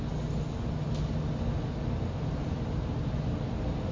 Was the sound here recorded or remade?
recorded